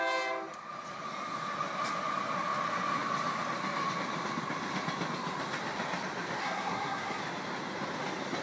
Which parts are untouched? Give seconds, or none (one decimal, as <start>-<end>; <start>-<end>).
0.0-6.4; 7.2-8.4